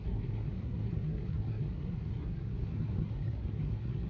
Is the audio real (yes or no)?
no